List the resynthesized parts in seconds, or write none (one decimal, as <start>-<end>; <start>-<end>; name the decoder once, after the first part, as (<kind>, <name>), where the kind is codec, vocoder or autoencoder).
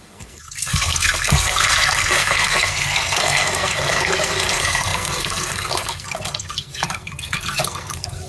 0.0-8.3 (codec, SNAC)